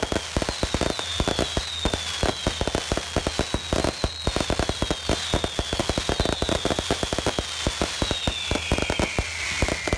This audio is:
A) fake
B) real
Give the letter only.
B